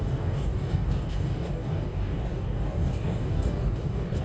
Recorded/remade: remade